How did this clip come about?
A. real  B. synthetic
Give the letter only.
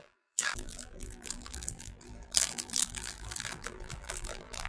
B